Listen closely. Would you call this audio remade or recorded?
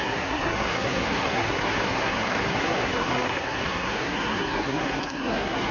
remade